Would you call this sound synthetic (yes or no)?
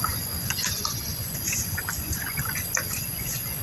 yes